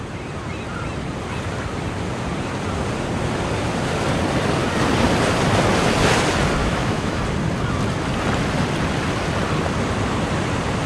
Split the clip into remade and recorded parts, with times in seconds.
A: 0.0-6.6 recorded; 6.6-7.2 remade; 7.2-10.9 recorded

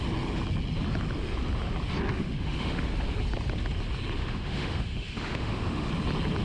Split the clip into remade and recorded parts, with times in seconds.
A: 0.0-2.1 recorded; 2.1-2.9 remade; 2.9-4.2 recorded; 4.2-5.9 remade; 5.9-6.4 recorded

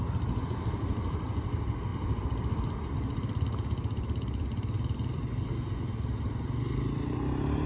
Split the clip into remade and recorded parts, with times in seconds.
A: 0.0-7.7 recorded

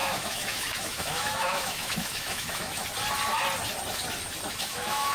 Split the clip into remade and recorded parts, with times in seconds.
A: 0.0-2.8 remade; 2.8-4.5 recorded; 4.5-5.1 remade

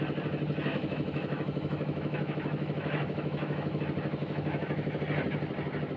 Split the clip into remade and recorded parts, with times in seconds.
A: 0.0-0.7 recorded; 0.7-3.8 remade; 3.8-4.2 recorded; 4.2-5.0 remade; 5.0-6.0 recorded

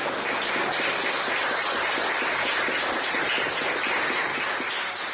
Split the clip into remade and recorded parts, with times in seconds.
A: 0.0-5.1 recorded

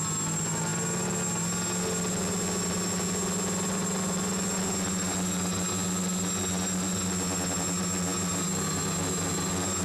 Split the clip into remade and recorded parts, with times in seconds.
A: 0.0-9.8 recorded